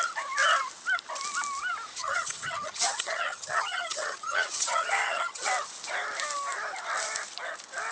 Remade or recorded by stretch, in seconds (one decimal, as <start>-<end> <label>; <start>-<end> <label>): 0.0-1.9 recorded; 1.9-5.5 remade; 5.5-7.9 recorded